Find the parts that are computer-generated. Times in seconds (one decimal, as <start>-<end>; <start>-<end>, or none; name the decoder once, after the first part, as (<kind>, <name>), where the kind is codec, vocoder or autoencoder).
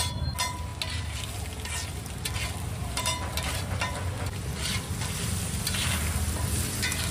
none